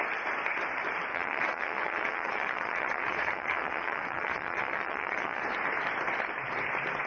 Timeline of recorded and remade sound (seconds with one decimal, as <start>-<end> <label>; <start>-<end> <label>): 0.0-1.1 recorded; 1.1-5.4 remade; 5.4-7.1 recorded